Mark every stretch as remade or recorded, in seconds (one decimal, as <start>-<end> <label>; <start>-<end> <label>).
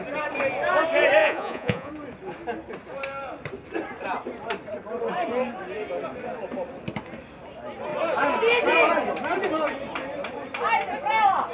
0.0-1.2 recorded; 1.2-1.9 remade; 1.9-11.5 recorded